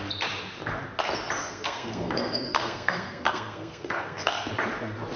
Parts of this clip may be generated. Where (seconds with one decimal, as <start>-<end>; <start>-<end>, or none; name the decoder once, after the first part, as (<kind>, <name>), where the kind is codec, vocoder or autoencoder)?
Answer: 1.4-4.5 (codec, SNAC)